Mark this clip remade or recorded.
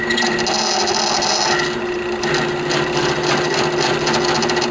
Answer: recorded